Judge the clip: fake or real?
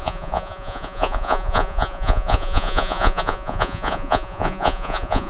fake